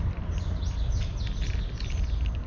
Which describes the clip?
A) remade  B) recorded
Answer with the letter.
B